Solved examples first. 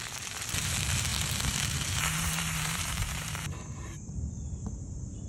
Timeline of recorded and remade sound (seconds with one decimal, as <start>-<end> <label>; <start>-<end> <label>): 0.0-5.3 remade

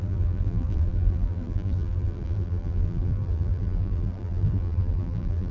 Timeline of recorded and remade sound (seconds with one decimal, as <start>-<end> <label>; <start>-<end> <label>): 0.0-5.5 remade

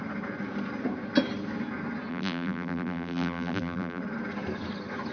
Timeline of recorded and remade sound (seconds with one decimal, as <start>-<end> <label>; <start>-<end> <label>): 0.0-2.1 recorded; 2.1-4.0 remade; 4.0-5.1 recorded